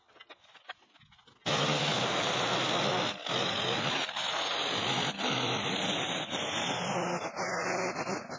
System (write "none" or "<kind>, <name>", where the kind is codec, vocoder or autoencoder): none